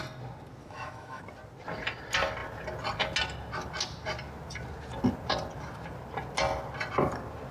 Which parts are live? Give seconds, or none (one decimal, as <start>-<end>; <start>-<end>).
0.0-0.6; 1.2-7.5